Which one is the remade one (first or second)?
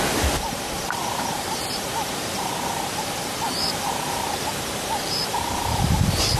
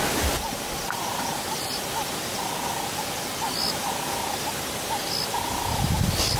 first